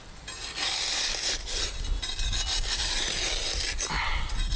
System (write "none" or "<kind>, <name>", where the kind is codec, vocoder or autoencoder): none